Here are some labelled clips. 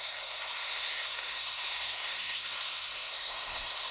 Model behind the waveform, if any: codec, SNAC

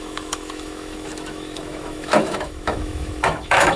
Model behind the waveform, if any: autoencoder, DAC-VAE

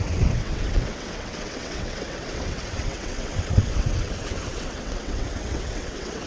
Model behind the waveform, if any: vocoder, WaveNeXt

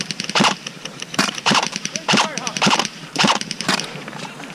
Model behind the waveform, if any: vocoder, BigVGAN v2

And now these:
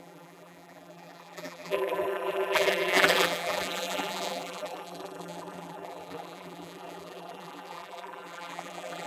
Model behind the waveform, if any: vocoder, BigVGAN v2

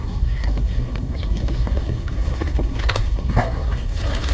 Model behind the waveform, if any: codec, SNAC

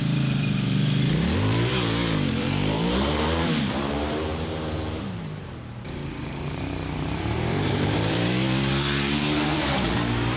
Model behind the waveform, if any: vocoder, BigVGAN v2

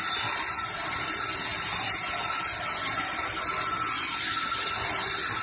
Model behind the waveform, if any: none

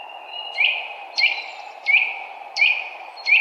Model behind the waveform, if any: none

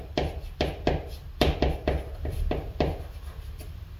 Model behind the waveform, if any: none